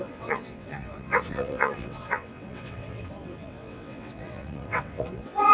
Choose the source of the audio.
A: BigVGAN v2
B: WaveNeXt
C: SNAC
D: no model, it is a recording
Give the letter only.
B